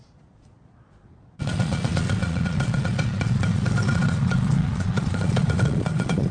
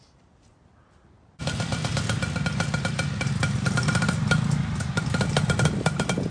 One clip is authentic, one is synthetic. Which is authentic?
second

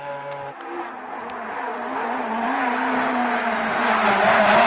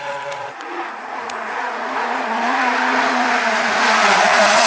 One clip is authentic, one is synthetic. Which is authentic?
first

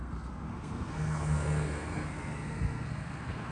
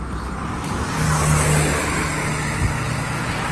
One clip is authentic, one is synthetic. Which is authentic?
second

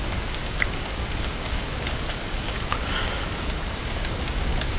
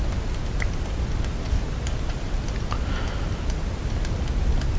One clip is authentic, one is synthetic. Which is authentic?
second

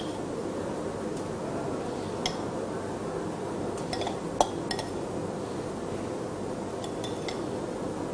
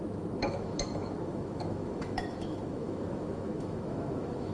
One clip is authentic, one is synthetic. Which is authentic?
first